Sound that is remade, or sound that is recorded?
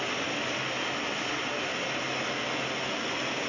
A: recorded